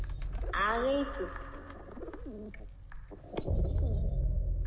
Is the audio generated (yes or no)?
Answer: no